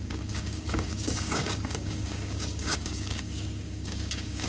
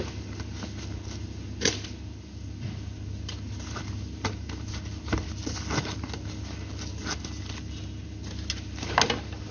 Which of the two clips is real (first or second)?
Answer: second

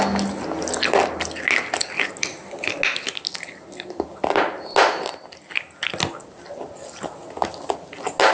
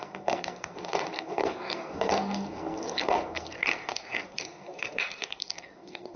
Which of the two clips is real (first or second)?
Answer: first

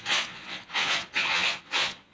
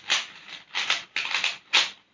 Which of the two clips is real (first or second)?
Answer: second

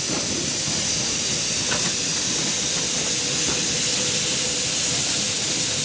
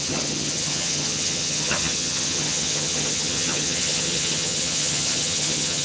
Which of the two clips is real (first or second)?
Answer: first